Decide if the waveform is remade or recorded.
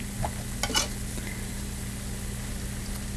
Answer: recorded